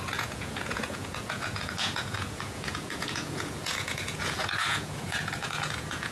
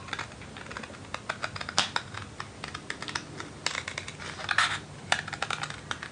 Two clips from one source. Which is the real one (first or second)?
second